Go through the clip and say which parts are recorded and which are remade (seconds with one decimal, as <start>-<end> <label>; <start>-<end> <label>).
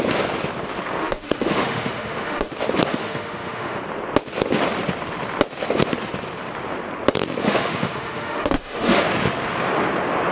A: 0.0-1.0 recorded; 1.0-2.5 remade; 2.5-2.9 recorded; 2.9-3.8 remade; 3.8-7.4 recorded; 7.4-9.0 remade; 9.0-10.3 recorded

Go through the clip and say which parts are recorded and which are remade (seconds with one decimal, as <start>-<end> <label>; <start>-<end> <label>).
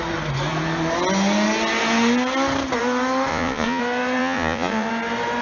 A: 0.0-3.3 recorded; 3.3-3.8 remade; 3.8-4.2 recorded; 4.2-4.9 remade; 4.9-5.4 recorded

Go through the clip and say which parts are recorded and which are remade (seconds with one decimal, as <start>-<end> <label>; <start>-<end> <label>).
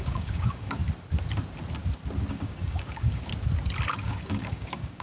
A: 0.0-0.8 remade; 0.8-2.3 recorded; 2.3-3.3 remade; 3.3-3.9 recorded; 3.9-5.0 remade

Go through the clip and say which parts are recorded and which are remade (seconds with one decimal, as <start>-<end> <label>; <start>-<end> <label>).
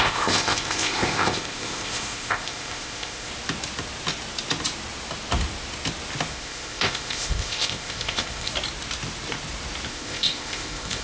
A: 0.0-3.3 remade; 3.3-6.3 recorded; 6.3-8.5 remade; 8.5-9.9 recorded; 9.9-11.0 remade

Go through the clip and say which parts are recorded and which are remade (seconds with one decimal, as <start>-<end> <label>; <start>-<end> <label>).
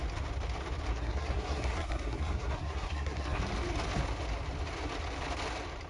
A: 0.0-0.9 recorded; 0.9-3.4 remade; 3.4-5.9 recorded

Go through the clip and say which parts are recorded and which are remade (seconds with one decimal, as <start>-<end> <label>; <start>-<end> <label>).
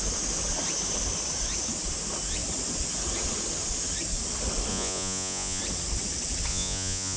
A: 0.0-4.7 recorded; 4.7-5.6 remade; 5.6-6.5 recorded; 6.5-7.2 remade